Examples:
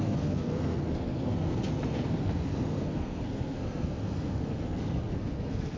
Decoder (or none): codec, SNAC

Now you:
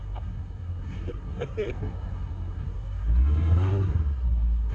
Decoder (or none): codec, SNAC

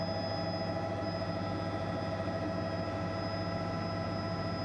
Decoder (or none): none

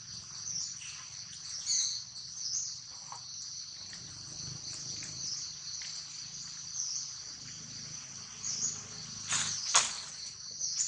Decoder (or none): none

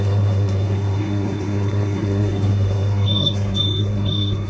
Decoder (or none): codec, SNAC